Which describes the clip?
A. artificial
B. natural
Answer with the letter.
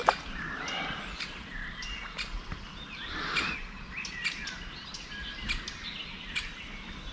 B